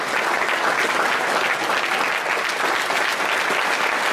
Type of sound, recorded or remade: recorded